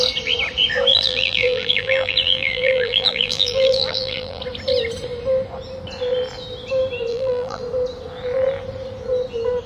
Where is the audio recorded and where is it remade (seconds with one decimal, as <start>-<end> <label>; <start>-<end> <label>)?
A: 0.0-0.9 recorded; 0.9-4.4 remade; 4.4-7.1 recorded; 7.1-7.6 remade; 7.6-9.7 recorded